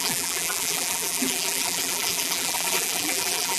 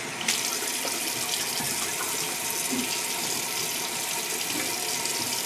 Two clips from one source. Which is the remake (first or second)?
first